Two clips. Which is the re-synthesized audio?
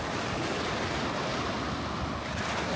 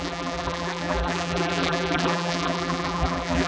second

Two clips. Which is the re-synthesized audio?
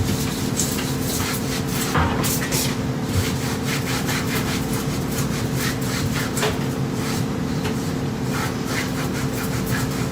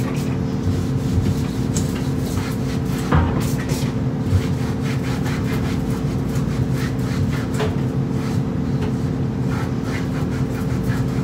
first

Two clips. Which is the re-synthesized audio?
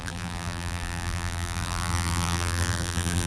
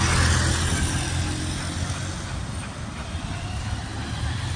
first